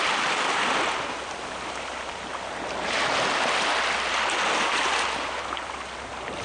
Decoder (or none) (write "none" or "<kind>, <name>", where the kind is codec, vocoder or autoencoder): none